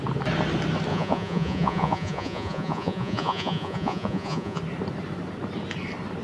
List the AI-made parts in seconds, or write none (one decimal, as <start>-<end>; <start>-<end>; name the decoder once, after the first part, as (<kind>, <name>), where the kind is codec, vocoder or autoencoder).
0.9-4.6 (vocoder, Vocos)